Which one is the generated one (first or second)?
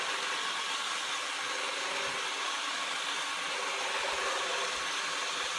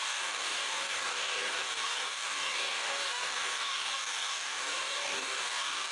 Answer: second